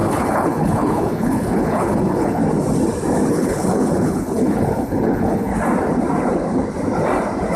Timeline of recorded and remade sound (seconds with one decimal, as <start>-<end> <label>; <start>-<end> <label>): 0.0-2.4 remade; 2.4-3.3 recorded; 3.3-5.5 remade; 5.5-7.6 recorded